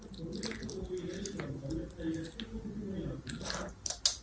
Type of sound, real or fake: real